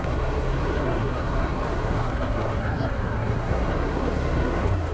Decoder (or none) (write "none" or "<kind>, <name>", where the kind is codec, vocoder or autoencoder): codec, SNAC